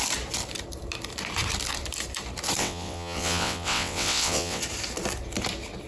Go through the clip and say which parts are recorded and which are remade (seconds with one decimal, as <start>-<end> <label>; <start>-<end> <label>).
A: 0.0-2.6 recorded; 2.6-4.6 remade; 4.6-5.9 recorded